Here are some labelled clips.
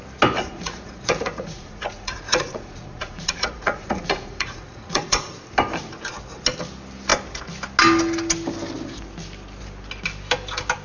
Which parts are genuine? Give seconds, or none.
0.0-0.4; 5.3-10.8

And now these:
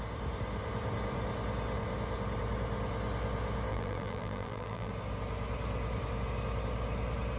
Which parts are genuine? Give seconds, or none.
0.0-3.7; 4.9-7.4

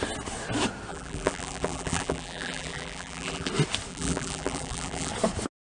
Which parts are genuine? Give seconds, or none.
0.0-0.9; 3.5-3.9; 5.1-5.6

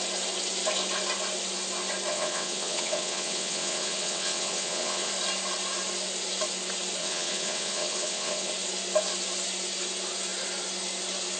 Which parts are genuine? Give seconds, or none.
0.0-2.1; 5.1-7.0; 8.5-11.4